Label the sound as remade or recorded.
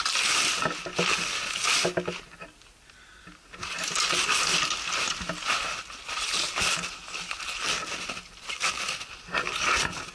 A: recorded